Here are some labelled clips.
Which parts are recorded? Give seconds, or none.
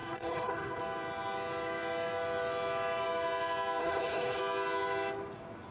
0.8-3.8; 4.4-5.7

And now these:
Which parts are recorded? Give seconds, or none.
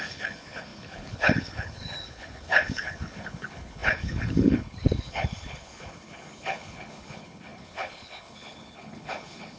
none